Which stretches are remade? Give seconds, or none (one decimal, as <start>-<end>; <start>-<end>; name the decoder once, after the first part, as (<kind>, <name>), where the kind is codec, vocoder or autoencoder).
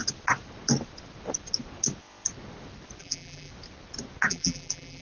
3.0-3.5 (vocoder, BigVGAN v2); 4.3-5.0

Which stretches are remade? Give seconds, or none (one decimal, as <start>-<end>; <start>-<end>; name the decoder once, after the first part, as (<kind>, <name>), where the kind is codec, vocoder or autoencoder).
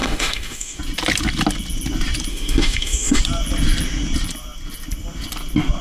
0.0-0.8 (autoencoder, DAC-VAE); 2.3-3.2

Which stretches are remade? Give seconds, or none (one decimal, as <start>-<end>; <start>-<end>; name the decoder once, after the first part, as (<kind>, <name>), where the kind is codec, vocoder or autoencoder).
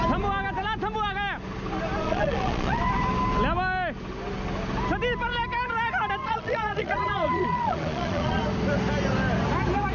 2.0-2.8 (vocoder, Vocos); 6.2-8.4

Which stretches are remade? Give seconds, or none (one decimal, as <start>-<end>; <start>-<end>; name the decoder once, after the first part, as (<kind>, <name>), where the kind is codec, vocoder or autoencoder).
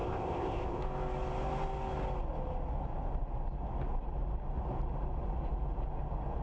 0.0-0.8 (codec, ZipCodec)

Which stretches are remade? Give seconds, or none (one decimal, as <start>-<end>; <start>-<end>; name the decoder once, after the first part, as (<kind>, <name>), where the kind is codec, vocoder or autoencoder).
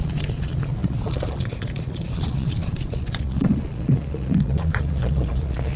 0.0-5.8 (vocoder, Vocos)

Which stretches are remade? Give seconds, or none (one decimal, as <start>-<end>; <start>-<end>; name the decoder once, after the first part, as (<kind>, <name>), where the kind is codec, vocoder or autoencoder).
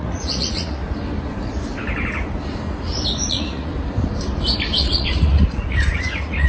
0.0-0.8 (vocoder, Vocos); 3.3-3.7; 4.8-6.5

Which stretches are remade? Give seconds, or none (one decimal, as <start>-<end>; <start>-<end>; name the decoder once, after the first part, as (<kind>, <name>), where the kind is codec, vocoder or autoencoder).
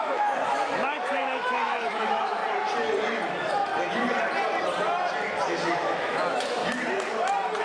0.0-2.4 (autoencoder, DAC-VAE); 3.3-3.7; 5.6-6.6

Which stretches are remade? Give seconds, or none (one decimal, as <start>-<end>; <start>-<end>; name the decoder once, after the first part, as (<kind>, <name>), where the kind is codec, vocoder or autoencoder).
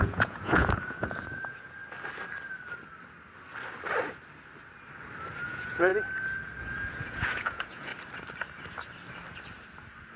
0.0-1.8 (vocoder, Vocos); 5.4-5.9; 6.6-7.9